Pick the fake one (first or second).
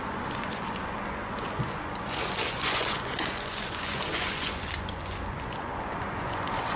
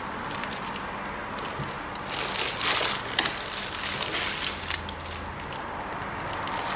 first